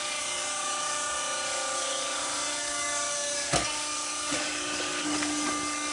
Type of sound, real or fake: fake